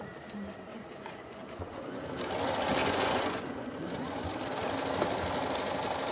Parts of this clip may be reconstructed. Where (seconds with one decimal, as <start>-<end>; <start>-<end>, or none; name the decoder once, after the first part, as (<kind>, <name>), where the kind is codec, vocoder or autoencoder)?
0.7-2.0 (vocoder, Vocos); 2.8-4.3